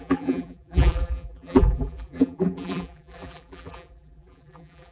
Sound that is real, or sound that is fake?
fake